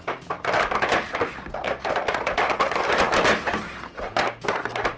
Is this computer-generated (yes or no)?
no